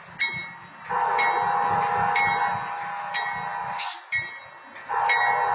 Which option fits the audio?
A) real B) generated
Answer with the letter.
A